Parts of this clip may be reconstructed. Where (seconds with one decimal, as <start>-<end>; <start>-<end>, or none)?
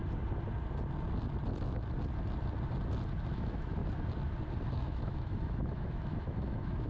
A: 3.3-3.8; 4.7-6.9